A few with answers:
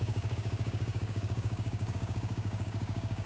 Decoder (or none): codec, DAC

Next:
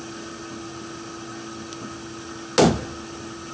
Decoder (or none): none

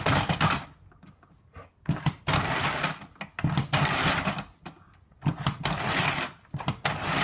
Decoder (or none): none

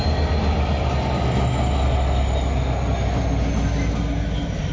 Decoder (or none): none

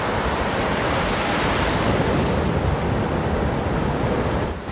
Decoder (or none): none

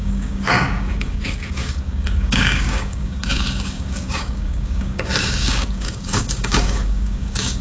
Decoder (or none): codec, DAC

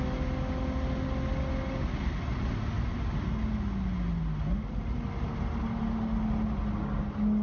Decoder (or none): none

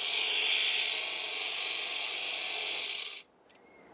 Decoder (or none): none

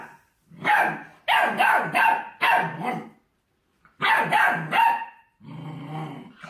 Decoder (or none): none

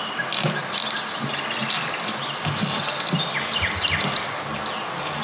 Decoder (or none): none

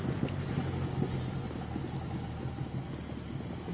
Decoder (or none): none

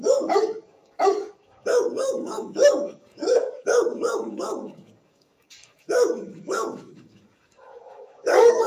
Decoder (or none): codec, DAC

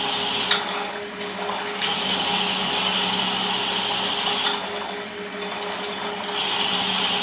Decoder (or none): none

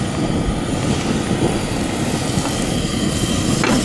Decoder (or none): none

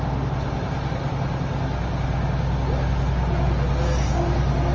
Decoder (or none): none